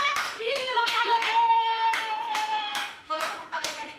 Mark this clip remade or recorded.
remade